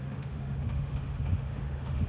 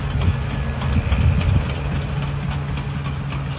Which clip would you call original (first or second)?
second